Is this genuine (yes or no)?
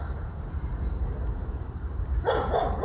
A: no